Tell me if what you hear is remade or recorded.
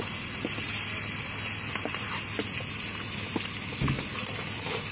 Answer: recorded